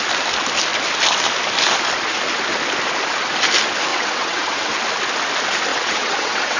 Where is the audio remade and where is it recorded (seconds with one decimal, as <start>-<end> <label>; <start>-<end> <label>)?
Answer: 0.0-3.9 recorded; 3.9-4.7 remade; 4.7-5.7 recorded; 5.7-6.6 remade